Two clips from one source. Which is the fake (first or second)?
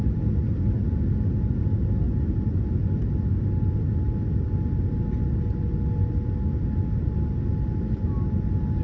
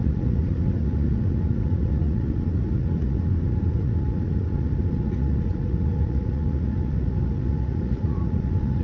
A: second